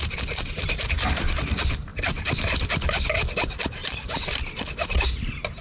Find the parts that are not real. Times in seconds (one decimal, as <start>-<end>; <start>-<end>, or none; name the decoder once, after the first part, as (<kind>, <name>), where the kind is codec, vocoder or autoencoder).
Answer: 1.9-3.3 (vocoder, BigVGAN v2); 3.8-4.6

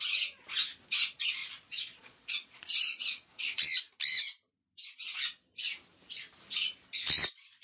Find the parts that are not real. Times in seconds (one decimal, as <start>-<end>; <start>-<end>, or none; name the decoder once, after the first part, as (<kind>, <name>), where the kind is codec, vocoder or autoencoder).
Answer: 1.4-3.4 (vocoder, Vocos)

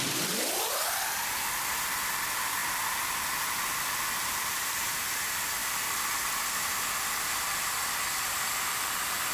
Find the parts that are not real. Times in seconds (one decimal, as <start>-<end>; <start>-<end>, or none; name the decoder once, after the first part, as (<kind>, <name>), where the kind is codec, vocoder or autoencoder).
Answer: 4.2-5.0 (vocoder, BigVGAN v2)